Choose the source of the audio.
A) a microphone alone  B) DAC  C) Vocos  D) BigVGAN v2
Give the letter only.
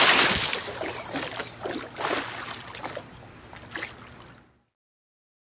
A